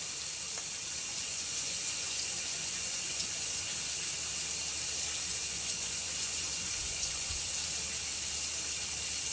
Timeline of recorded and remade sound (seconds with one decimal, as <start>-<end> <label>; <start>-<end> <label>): 0.0-1.1 recorded; 1.1-3.7 remade; 3.7-5.3 recorded; 5.3-7.5 remade; 7.5-9.3 recorded